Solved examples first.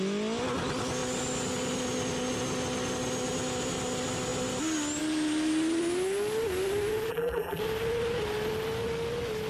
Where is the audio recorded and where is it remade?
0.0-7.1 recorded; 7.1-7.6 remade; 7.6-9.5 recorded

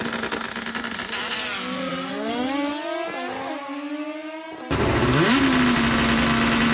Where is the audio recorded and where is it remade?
0.0-1.9 recorded; 1.9-2.7 remade; 2.7-4.2 recorded; 4.2-5.4 remade; 5.4-6.7 recorded

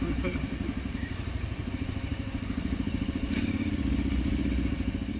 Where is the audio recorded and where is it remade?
0.0-0.9 recorded; 0.9-1.7 remade; 1.7-2.1 recorded; 2.1-5.2 remade

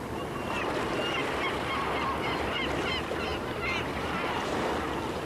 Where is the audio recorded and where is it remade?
0.0-1.2 recorded; 1.2-2.6 remade; 2.6-5.2 recorded

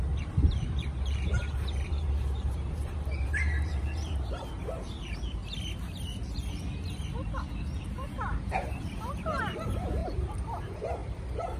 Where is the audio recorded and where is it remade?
0.0-5.4 remade; 5.4-7.8 recorded; 7.8-11.6 remade

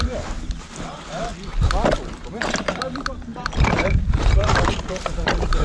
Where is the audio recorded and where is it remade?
0.0-1.3 remade; 1.3-2.3 recorded; 2.3-5.6 remade